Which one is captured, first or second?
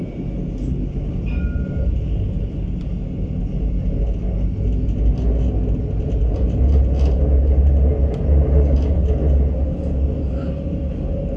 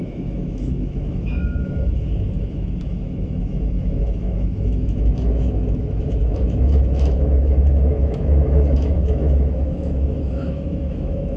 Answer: first